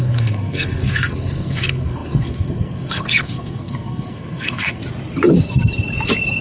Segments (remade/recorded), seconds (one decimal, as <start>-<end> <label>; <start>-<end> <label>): 0.0-4.8 remade; 4.8-6.4 recorded